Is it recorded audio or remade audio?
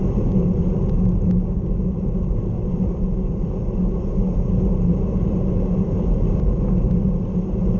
recorded